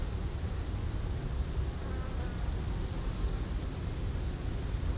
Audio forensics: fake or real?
real